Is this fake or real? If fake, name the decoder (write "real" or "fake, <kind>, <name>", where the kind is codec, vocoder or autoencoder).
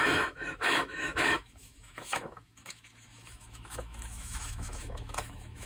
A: fake, autoencoder, DAC-VAE